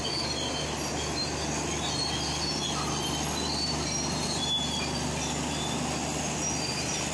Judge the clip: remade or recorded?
recorded